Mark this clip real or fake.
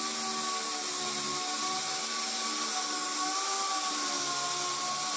real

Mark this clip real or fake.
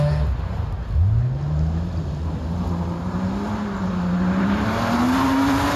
real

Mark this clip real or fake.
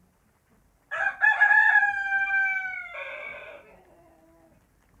real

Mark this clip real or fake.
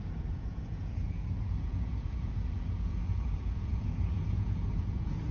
fake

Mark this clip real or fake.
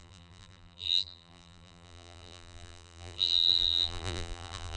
fake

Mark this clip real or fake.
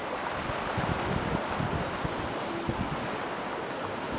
real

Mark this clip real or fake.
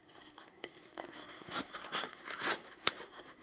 fake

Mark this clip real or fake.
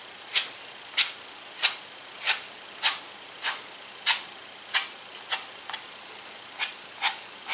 real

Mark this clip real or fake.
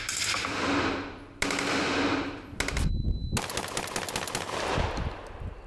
real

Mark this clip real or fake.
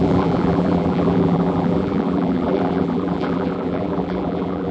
fake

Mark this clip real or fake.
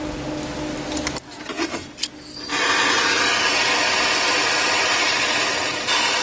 real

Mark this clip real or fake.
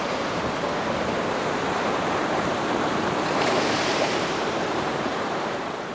fake